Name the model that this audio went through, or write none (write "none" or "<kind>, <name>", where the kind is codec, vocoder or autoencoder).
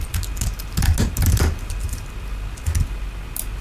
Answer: none